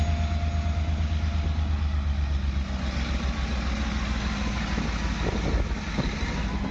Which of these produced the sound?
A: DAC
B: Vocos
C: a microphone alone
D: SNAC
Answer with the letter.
C